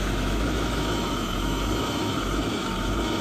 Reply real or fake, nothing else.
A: fake